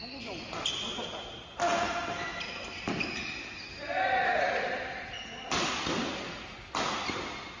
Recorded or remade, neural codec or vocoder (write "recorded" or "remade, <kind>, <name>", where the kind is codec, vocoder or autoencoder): recorded